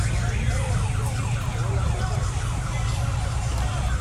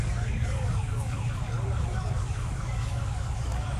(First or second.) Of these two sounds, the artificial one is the second